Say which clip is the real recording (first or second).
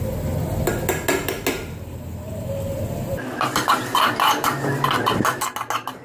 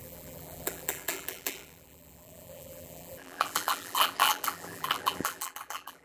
first